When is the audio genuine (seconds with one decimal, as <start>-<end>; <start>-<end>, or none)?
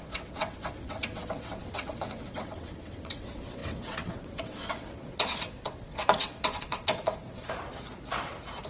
7.4-8.7